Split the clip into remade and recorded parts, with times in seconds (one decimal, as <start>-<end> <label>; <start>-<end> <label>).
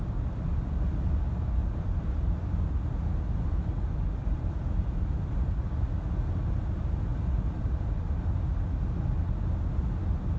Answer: 0.0-4.2 recorded; 4.2-5.5 remade; 5.5-7.1 recorded; 7.1-8.0 remade; 8.0-10.4 recorded